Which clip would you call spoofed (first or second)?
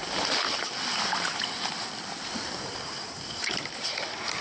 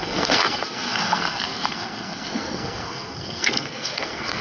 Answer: second